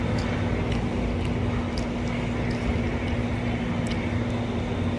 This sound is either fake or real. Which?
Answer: real